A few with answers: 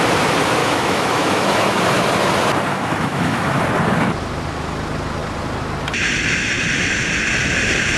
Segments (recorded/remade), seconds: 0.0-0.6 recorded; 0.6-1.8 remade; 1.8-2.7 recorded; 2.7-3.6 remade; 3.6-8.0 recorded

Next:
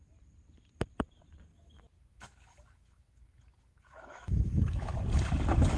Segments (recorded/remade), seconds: 0.0-1.5 recorded; 1.5-5.0 remade; 5.0-5.8 recorded

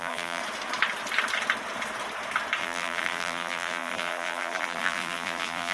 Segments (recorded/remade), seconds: 0.0-0.4 remade; 0.4-2.6 recorded; 2.6-5.7 remade